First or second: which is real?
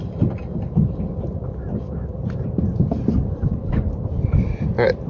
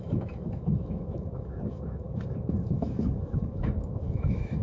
first